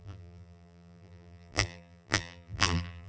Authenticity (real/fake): fake